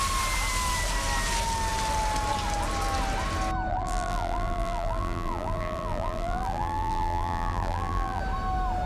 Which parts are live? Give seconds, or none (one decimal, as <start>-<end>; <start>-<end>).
0.0-3.7; 8.2-8.9